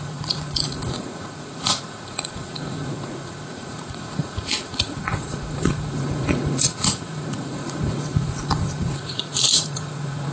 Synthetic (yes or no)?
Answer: yes